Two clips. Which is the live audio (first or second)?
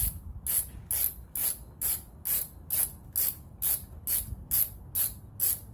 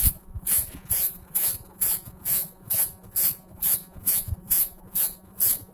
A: first